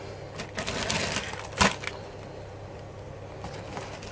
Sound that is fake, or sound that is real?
real